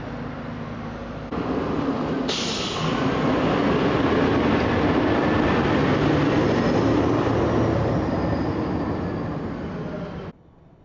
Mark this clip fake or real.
real